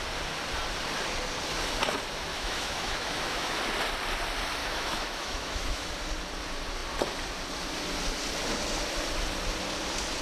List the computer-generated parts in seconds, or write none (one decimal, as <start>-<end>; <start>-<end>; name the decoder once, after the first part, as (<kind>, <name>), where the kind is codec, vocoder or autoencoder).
2.3-3.6 (autoencoder, DAC-VAE); 4.6-5.9